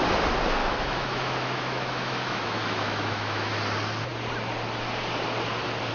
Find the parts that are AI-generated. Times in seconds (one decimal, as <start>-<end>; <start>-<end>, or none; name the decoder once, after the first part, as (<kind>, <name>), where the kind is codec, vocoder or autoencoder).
0.6-3.5 (autoencoder, DAC-VAE)